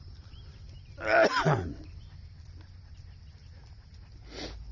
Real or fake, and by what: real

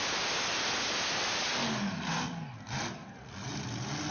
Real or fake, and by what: real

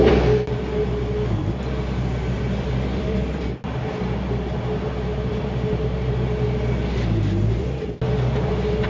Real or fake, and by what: real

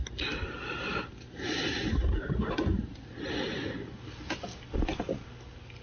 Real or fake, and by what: real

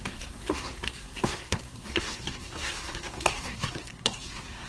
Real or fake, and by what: fake, codec, SNAC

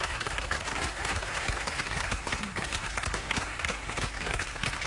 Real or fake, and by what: fake, codec, SNAC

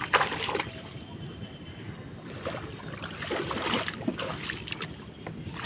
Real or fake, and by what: real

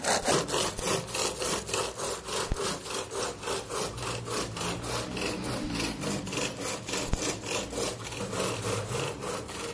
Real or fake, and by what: real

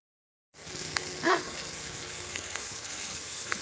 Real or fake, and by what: fake, codec, SNAC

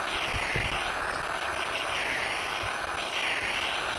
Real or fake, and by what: real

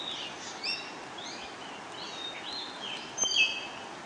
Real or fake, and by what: real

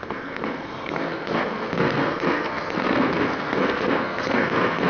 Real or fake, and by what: fake, codec, SNAC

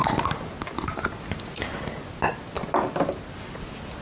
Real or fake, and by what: real